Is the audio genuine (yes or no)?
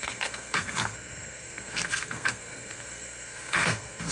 no